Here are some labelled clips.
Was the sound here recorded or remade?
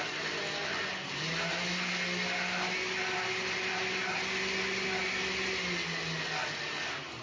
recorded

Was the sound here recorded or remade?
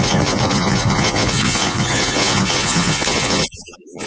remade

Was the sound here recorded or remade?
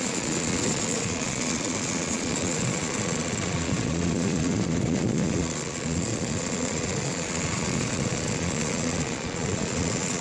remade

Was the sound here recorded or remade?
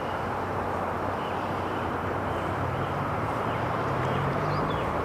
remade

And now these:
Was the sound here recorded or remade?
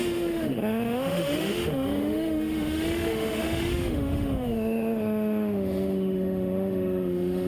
remade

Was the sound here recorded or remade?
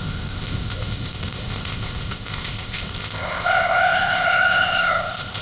remade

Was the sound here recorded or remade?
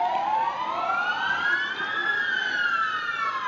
recorded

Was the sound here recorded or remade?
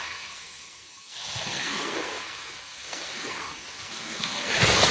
remade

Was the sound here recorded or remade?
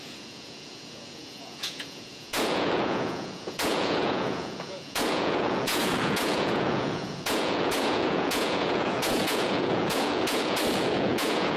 remade